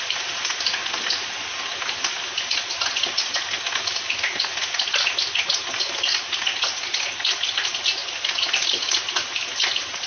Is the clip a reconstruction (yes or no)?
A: no